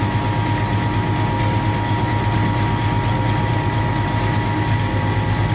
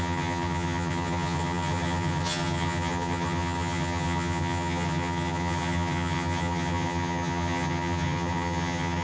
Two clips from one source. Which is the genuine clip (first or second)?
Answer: first